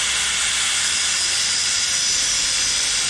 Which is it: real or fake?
real